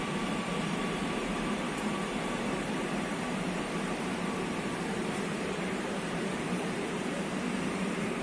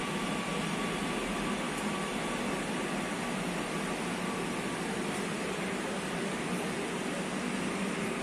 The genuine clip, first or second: second